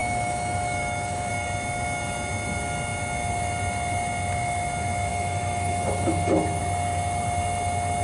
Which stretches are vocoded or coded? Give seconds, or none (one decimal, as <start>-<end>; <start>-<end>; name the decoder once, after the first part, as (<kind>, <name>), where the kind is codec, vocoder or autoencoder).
0.0-1.3 (autoencoder, DAC-VAE); 5.1-6.6